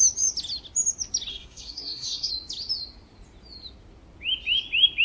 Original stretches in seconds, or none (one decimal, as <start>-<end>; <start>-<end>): 0.0-1.3; 2.3-5.0